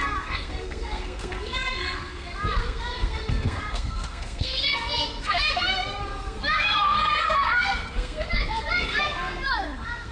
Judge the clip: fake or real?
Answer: fake